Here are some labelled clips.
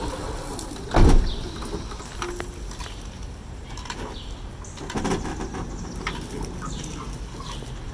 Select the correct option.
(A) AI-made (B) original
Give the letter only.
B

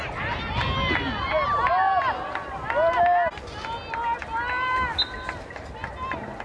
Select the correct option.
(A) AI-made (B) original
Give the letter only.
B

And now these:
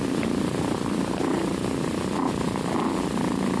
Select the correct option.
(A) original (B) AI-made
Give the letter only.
A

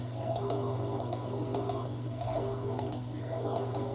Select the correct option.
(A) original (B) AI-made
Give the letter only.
B